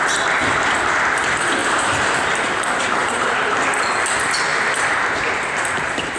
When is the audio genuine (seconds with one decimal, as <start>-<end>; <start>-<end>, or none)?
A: 0.0-1.6; 3.6-4.5